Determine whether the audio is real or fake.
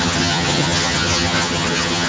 fake